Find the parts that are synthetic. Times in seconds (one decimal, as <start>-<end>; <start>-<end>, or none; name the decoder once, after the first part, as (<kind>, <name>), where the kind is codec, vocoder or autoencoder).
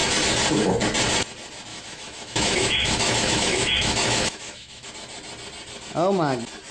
1.7-4.9 (autoencoder, DAC-VAE)